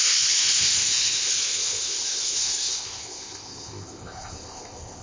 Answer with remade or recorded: remade